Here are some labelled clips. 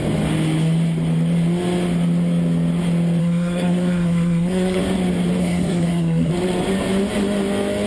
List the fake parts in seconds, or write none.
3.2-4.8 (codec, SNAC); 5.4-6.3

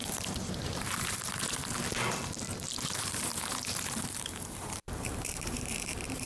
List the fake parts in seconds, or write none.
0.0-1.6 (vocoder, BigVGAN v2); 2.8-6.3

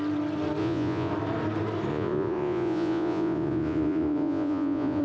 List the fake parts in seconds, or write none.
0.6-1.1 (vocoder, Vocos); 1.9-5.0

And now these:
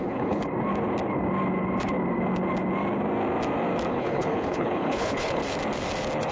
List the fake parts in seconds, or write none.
0.0-0.4 (codec, HILCodec); 3.9-5.4